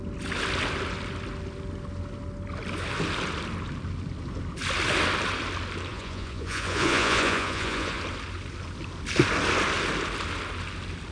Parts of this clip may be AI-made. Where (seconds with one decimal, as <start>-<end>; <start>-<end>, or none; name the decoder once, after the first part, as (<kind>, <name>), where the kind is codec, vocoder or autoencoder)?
5.9-8.0 (vocoder, Vocos)